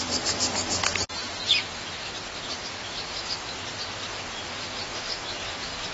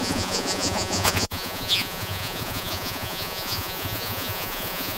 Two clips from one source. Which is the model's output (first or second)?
second